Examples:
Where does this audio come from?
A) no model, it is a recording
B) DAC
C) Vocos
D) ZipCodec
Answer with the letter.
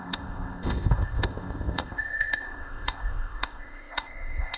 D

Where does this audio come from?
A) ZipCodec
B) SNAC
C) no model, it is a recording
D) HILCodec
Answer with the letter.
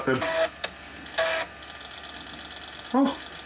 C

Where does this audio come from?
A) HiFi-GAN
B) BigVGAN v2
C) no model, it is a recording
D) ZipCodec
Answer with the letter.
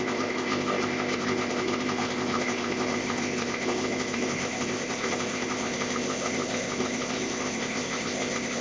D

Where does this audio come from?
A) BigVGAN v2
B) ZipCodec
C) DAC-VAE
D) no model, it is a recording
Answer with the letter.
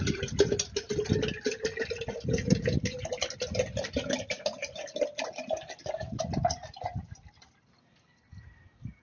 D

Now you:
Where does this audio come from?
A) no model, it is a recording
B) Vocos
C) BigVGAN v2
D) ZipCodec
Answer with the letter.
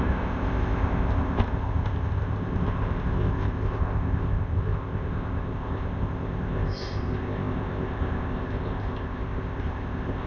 D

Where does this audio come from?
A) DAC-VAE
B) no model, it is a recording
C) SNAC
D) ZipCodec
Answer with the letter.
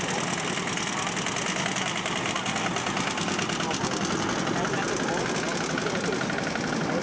B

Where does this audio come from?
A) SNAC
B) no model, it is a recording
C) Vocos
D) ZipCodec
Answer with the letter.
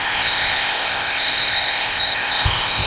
D